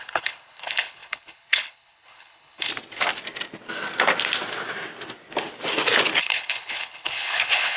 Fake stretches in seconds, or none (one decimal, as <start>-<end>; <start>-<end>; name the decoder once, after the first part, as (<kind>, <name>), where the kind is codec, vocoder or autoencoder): 0.0-2.7 (codec, HILCodec); 6.2-7.8